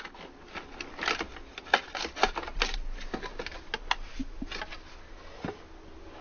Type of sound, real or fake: real